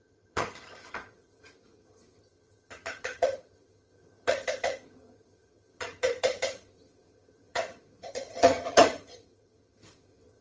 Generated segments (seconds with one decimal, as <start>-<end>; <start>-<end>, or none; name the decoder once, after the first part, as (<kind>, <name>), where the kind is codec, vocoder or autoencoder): 0.0-10.4 (vocoder, HiFi-GAN)